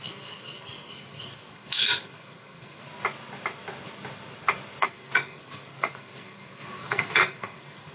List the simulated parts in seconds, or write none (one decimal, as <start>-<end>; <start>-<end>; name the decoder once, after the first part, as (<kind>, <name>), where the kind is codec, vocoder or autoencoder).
0.0-2.8 (codec, SNAC); 4.8-7.9